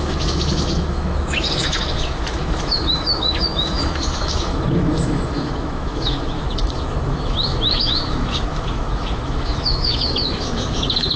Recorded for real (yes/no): no